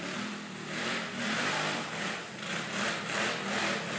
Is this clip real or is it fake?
real